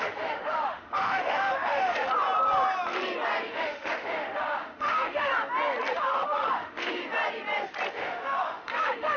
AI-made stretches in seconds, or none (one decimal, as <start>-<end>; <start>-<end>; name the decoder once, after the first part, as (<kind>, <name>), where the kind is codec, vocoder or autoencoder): 0.0-2.1 (autoencoder, DAC-VAE); 3.5-5.3; 5.9-7.0; 7.9-9.2

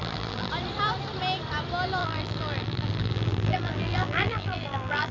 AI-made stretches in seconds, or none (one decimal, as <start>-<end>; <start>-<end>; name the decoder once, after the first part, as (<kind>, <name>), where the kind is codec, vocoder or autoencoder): 0.0-0.5 (vocoder, BigVGAN v2); 2.0-5.1

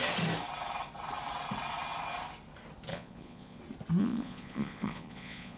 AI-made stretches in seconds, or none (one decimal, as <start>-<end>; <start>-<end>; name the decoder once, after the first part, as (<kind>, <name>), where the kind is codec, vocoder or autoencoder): 2.9-3.6 (vocoder, Vocos); 4.0-5.6

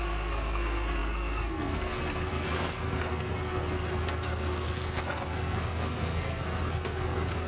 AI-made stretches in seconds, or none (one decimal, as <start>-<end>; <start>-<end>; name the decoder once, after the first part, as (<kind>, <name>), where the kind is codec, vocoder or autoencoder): 0.0-7.5 (codec, SNAC)

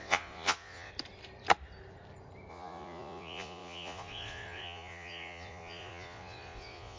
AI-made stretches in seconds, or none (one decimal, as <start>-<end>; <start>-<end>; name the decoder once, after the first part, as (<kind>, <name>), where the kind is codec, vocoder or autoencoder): 0.0-0.9 (vocoder, Vocos); 2.5-7.0

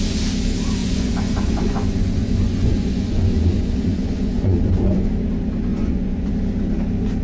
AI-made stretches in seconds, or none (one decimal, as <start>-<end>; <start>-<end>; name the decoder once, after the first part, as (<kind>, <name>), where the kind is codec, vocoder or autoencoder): 0.8-5.1 (vocoder, Vocos); 5.7-6.3

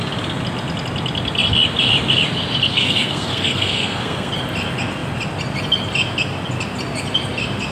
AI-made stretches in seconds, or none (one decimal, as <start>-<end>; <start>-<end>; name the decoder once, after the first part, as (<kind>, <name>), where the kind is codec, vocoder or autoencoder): 2.7-4.3 (codec, SNAC)

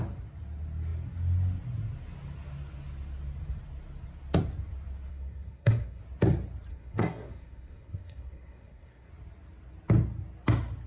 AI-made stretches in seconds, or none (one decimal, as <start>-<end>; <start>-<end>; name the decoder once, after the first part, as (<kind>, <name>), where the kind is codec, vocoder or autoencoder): 5.1-6.0 (codec, SNAC); 6.7-9.1